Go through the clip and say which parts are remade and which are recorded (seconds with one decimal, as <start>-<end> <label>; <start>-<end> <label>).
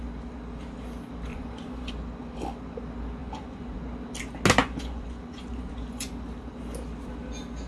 0.0-1.3 recorded; 1.3-1.9 remade; 1.9-3.2 recorded; 3.2-3.8 remade; 3.8-4.6 recorded; 4.6-6.1 remade; 6.1-7.7 recorded